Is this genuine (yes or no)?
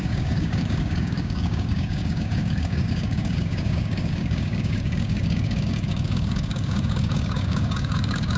no